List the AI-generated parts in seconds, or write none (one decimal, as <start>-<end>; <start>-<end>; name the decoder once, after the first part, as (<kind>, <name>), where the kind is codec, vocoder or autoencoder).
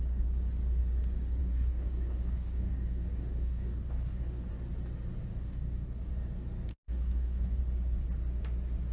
1.4-4.5 (codec, DAC); 5.3-6.1; 6.7-7.6